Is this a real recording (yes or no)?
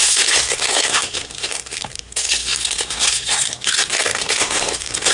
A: no